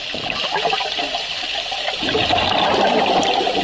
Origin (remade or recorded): recorded